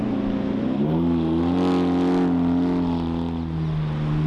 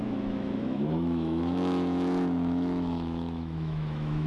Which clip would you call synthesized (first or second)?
second